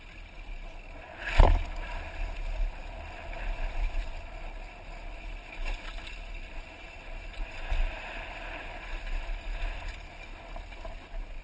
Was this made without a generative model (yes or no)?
yes